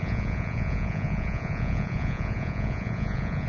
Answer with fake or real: fake